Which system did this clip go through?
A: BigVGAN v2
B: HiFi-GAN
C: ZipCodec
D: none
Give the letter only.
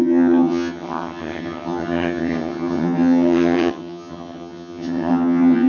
B